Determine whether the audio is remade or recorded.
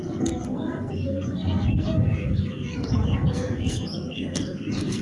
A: remade